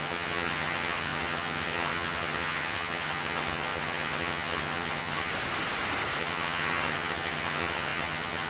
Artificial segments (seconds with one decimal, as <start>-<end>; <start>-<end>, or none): 0.0-5.3; 6.2-8.5